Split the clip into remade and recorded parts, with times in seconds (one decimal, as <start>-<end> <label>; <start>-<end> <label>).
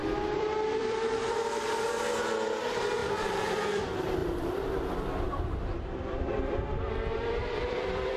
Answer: 0.0-1.4 remade; 1.4-3.0 recorded; 3.0-3.8 remade; 3.8-4.2 recorded; 4.2-8.2 remade